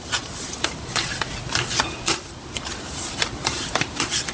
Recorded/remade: recorded